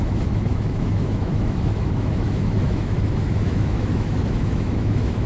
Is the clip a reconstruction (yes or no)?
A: yes